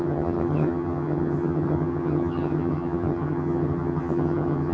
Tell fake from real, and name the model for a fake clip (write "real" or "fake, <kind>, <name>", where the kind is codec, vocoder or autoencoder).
fake, vocoder, HiFi-GAN